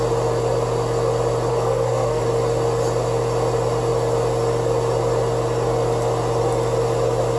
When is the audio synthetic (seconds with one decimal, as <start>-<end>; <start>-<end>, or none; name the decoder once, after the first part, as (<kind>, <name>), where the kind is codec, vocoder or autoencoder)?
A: 1.5-2.2 (codec, SNAC)